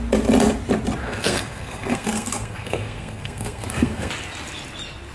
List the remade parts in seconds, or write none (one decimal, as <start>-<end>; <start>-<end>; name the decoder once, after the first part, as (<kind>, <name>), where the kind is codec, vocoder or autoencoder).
1.0-4.1 (codec, SNAC)